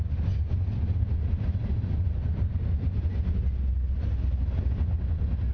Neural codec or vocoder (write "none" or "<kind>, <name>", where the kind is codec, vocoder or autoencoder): none